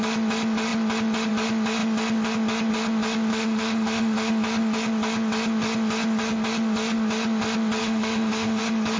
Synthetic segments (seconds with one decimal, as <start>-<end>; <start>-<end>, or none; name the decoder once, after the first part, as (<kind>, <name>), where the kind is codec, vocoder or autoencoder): 3.3-4.3 (autoencoder, DAC-VAE); 7.8-8.6